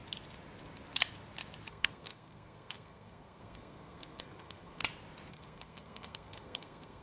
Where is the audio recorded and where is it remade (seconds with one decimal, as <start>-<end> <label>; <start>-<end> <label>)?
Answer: 0.0-1.7 recorded; 1.7-4.8 remade; 4.8-5.3 recorded; 5.3-7.0 remade